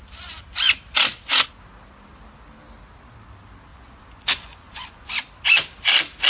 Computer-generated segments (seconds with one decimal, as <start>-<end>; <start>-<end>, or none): 3.7-5.1